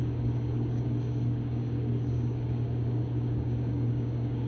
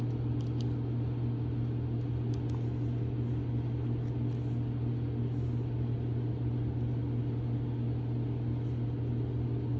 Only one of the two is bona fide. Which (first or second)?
second